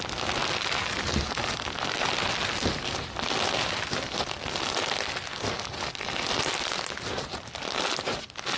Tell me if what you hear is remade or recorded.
recorded